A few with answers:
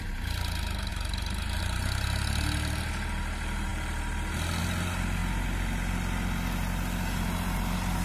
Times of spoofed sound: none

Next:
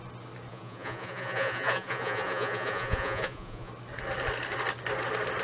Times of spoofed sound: 0.5-3.7

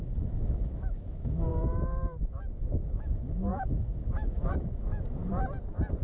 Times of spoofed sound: 0.0-5.2